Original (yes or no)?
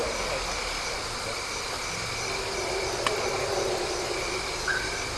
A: yes